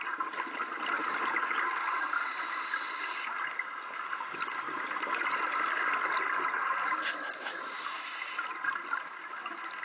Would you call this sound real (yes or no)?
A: yes